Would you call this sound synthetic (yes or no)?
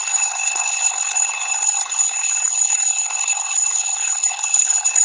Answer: yes